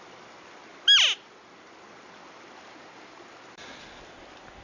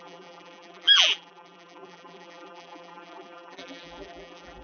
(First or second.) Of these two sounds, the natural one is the first